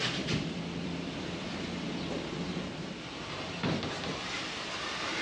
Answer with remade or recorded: remade